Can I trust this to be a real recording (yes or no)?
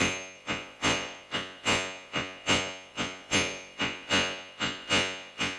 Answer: no